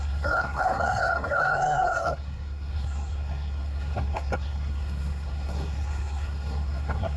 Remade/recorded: remade